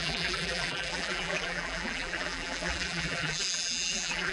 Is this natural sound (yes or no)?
no